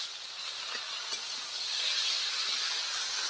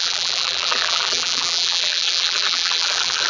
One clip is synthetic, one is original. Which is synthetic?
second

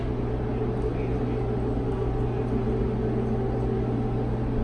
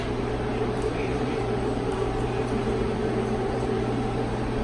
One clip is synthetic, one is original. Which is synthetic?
second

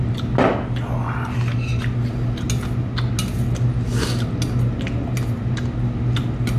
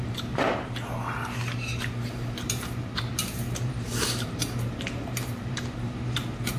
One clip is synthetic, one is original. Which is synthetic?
second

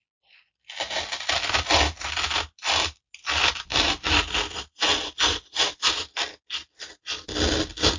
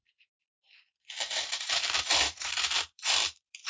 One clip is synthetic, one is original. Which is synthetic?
second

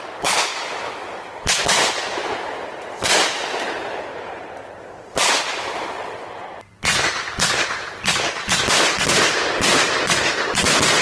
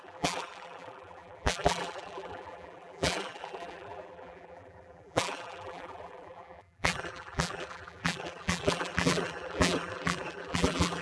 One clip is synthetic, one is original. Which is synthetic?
second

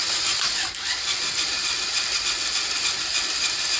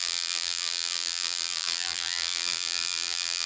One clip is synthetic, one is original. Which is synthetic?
second